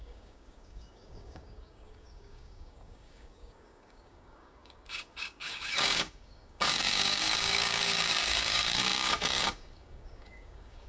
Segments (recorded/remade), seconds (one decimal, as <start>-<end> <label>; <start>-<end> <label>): 0.0-10.9 remade

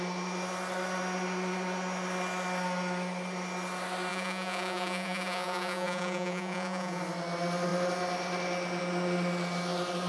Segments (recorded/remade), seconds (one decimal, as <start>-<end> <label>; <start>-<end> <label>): 0.0-4.1 recorded; 4.1-7.0 remade; 7.0-10.1 recorded

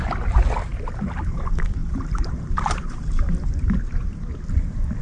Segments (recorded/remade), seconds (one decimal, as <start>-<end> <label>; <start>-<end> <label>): 0.0-1.8 recorded; 1.8-3.8 remade; 3.8-5.0 recorded

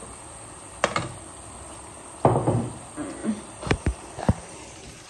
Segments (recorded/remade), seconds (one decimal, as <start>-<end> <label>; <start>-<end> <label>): 0.0-3.2 recorded; 3.2-5.1 remade

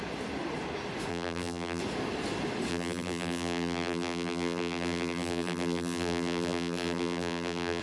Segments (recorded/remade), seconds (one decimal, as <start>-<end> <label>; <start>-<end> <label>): 0.0-1.1 recorded; 1.1-1.8 remade; 1.8-2.7 recorded; 2.7-7.8 remade

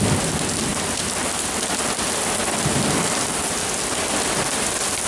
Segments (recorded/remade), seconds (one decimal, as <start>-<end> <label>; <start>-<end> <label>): 0.0-5.1 recorded

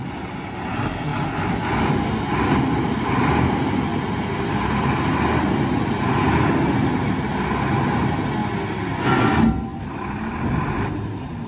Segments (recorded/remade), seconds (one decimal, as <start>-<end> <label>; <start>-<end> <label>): 0.0-11.5 recorded

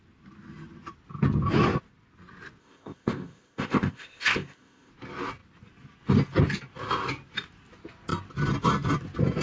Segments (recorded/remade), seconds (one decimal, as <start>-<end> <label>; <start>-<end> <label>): 0.0-2.6 recorded; 2.6-4.9 remade; 4.9-9.4 recorded